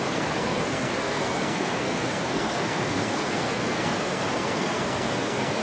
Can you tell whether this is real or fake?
fake